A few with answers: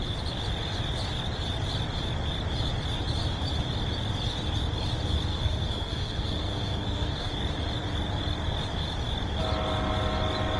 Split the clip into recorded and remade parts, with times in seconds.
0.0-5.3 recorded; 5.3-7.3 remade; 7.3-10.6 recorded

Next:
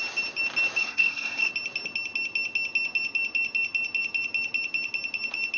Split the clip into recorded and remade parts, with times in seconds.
0.0-0.8 recorded; 0.8-1.5 remade; 1.5-5.6 recorded

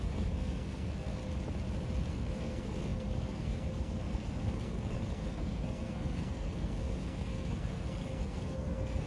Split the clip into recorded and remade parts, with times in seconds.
0.0-1.2 remade; 1.2-2.1 recorded; 2.1-9.1 remade

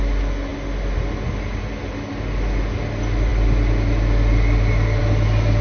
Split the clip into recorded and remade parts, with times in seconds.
0.0-5.6 recorded

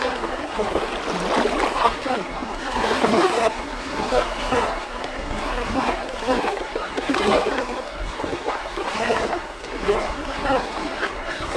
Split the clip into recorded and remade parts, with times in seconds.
0.0-0.9 remade; 0.9-1.7 recorded; 1.7-11.6 remade

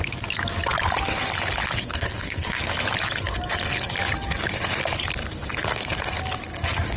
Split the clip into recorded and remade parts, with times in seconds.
0.0-1.9 recorded; 1.9-2.6 remade; 2.6-7.0 recorded

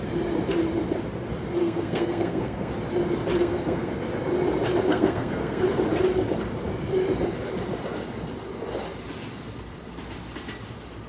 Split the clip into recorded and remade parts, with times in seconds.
0.0-1.6 recorded; 1.6-2.7 remade; 2.7-3.4 recorded; 3.4-3.9 remade; 3.9-4.9 recorded; 4.9-5.6 remade; 5.6-11.1 recorded

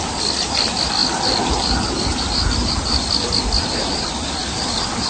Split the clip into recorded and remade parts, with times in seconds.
0.0-5.1 recorded